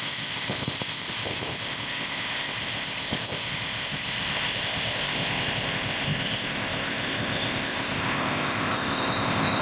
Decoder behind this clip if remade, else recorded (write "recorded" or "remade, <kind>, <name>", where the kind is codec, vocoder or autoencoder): remade, codec, ZipCodec